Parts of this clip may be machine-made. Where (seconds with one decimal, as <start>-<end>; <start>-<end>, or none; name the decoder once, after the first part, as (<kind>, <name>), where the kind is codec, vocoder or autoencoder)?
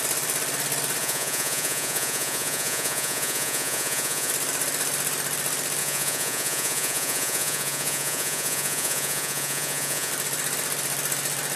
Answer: 1.0-4.3 (vocoder, Vocos); 5.8-10.1